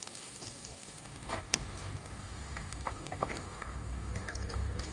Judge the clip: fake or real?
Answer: fake